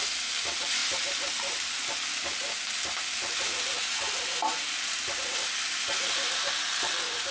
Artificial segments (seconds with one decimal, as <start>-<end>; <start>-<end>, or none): 0.8-1.7